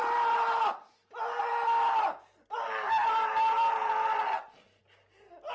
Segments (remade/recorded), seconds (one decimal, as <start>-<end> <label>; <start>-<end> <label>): 0.0-5.5 recorded